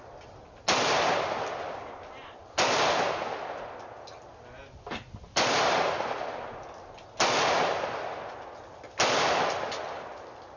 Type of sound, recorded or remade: recorded